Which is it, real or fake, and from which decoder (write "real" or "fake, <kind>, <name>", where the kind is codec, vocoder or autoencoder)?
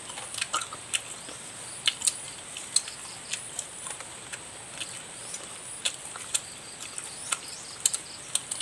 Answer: real